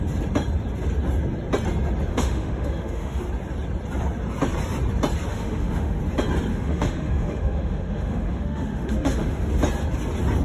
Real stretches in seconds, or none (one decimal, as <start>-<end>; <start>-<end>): 0.0-2.1; 3.2-5.3; 6.0-6.5; 9.5-10.4